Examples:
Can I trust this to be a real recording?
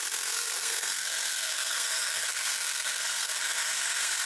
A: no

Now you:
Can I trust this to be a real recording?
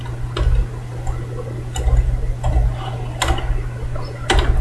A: yes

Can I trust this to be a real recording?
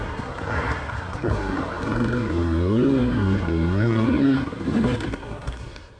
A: no